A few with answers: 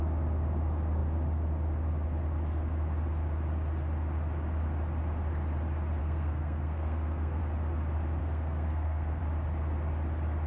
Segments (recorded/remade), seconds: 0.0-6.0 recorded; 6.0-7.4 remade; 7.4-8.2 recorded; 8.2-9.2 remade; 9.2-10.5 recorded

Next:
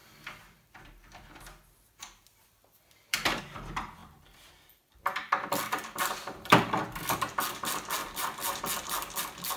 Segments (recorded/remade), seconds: 0.0-3.4 remade; 3.4-4.0 recorded; 4.0-7.0 remade; 7.0-8.0 recorded; 8.0-8.6 remade; 8.6-9.6 recorded